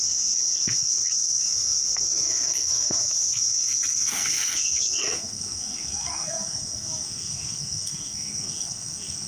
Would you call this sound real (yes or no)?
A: no